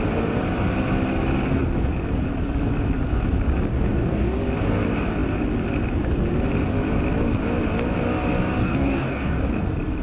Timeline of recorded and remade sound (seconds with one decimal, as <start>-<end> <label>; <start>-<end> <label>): 0.0-3.7 recorded; 3.7-4.4 remade; 4.4-8.6 recorded; 8.6-9.5 remade; 9.5-10.0 recorded